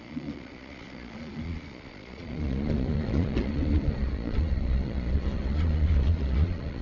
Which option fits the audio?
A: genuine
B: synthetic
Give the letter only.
B